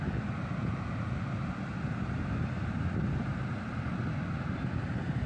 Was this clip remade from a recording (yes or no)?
no